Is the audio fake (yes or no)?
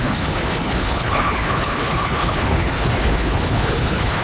yes